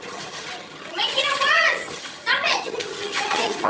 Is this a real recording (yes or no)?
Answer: no